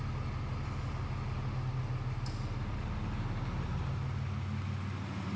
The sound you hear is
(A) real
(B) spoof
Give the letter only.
A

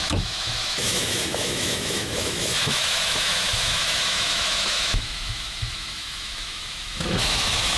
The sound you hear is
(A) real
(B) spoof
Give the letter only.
B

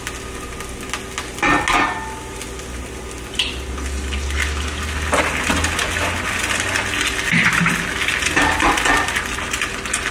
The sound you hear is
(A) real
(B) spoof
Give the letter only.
A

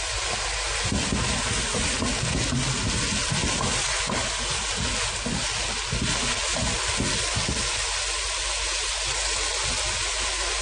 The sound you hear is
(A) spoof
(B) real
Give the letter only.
B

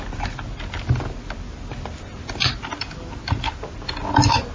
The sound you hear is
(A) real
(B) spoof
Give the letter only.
A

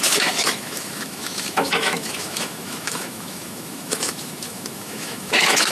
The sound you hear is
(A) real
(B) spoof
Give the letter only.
B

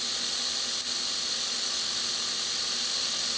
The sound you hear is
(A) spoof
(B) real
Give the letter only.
B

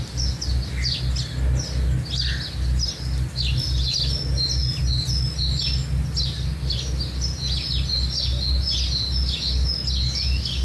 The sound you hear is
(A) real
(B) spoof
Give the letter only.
A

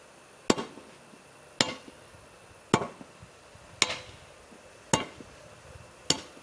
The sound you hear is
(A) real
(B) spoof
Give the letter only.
A